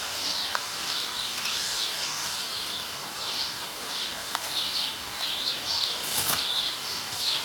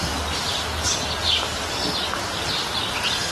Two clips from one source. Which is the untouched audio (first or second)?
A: second